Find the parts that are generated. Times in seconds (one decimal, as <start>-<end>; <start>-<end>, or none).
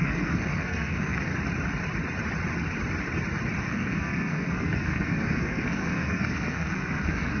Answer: 0.0-1.3; 3.6-7.4